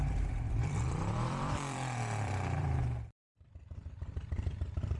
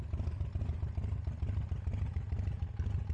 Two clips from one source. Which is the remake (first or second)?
first